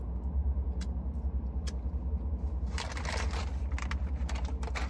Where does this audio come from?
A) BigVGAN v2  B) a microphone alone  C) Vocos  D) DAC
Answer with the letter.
B